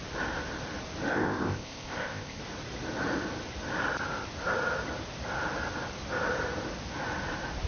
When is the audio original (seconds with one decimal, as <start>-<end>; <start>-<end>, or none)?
0.0-1.1; 2.4-7.7